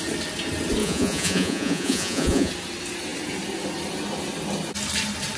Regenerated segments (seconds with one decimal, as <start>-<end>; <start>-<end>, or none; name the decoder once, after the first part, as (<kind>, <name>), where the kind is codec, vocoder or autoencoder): 0.8-2.5 (vocoder, Vocos)

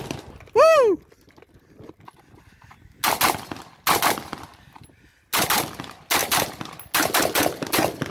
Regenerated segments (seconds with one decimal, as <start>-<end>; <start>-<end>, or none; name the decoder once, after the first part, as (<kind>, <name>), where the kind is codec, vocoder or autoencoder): none

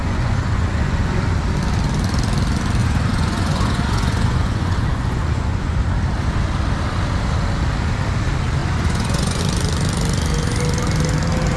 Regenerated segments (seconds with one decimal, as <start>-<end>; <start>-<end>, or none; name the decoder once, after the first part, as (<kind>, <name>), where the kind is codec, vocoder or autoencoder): 0.0-1.2 (vocoder, Vocos); 2.8-5.8; 8.6-9.4

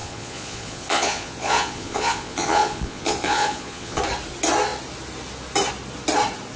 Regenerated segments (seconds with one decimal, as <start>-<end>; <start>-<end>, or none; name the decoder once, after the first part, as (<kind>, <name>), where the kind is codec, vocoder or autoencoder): 0.0-4.0 (vocoder, Vocos)

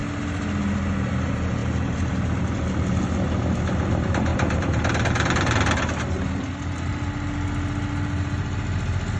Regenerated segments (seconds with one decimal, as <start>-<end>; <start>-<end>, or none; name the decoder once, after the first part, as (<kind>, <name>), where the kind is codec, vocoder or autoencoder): none